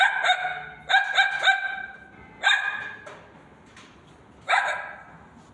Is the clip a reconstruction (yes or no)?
no